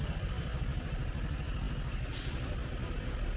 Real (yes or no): yes